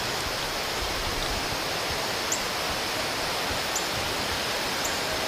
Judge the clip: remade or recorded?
recorded